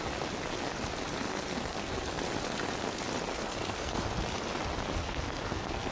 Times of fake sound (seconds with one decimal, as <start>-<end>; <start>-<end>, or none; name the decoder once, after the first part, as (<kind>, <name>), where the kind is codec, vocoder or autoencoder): 1.3-2.2 (codec, SNAC); 3.3-4.0; 5.0-5.9